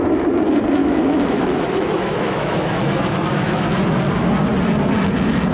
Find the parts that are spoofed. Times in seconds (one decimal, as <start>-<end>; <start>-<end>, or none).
0.8-3.6